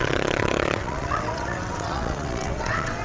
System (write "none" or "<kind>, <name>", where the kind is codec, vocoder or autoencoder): vocoder, WaveNeXt